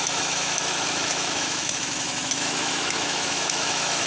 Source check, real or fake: fake